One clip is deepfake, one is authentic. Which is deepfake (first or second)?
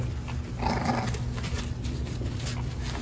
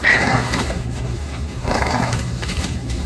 second